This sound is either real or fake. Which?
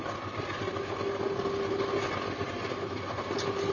real